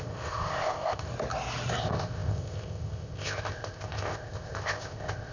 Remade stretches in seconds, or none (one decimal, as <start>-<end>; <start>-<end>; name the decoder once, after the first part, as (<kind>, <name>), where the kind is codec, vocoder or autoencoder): 0.0-1.1 (codec, ZipCodec); 1.8-5.3